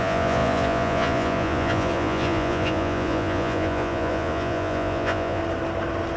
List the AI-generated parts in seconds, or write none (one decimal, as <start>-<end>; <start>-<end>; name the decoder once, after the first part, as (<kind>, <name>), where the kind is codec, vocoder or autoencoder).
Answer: 0.0-5.4 (vocoder, Vocos)